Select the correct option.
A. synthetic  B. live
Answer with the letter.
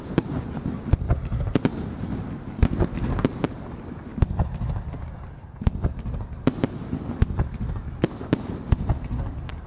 B